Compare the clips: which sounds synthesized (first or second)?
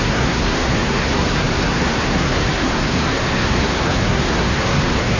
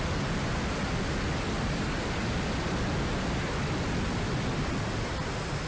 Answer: first